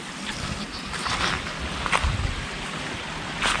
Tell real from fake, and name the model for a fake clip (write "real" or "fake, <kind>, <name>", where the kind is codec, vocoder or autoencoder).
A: real